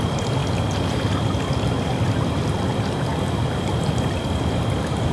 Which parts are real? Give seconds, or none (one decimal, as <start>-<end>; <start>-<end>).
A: 0.0-5.1